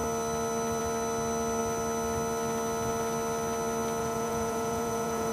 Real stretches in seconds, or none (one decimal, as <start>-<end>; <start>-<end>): 0.0-4.0